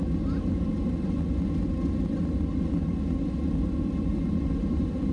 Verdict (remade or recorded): recorded